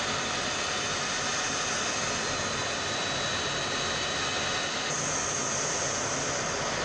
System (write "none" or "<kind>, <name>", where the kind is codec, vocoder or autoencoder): none